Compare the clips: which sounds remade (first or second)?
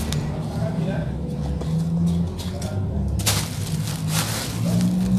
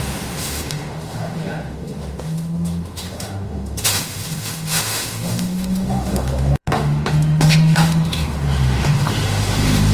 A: second